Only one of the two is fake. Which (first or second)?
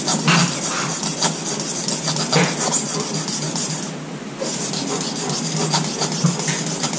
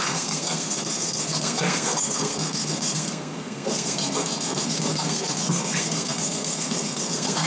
second